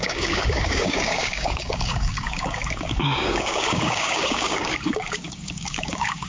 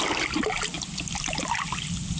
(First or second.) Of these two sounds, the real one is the second